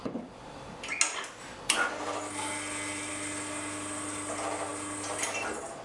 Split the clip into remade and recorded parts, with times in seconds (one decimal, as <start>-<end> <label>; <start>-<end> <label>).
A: 0.0-5.8 recorded